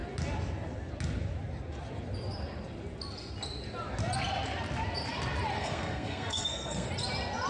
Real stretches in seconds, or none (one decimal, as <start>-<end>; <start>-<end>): 0.0-5.6; 6.9-7.5